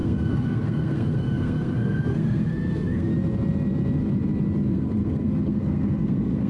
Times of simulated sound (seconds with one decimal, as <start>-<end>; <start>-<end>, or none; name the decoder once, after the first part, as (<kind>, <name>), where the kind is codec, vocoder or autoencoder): 0.0-3.1 (codec, SNAC); 4.7-6.5